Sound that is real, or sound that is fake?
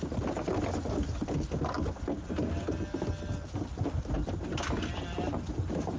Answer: real